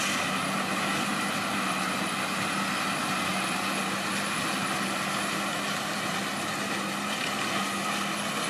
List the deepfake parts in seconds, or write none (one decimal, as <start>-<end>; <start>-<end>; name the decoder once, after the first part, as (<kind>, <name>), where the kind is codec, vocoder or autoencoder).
none